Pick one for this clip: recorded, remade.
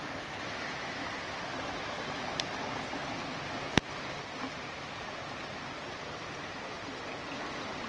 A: recorded